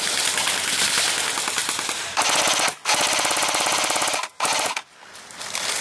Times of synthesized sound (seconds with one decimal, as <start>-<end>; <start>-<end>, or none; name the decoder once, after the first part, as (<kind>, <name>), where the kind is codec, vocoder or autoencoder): 0.0-1.6 (vocoder, BigVGAN v2); 5.1-5.8